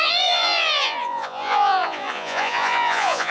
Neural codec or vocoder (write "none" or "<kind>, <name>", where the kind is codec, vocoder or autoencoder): vocoder, Vocos